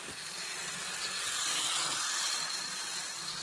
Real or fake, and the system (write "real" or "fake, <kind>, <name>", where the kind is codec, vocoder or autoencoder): real